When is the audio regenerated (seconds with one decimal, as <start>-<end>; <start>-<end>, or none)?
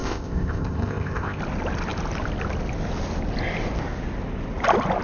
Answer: 0.0-1.4